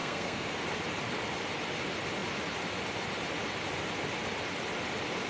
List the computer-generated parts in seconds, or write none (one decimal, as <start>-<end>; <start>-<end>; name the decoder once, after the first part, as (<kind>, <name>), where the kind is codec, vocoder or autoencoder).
0.0-0.6 (codec, SNAC)